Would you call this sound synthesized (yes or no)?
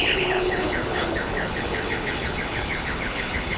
yes